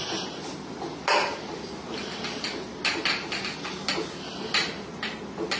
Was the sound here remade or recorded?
recorded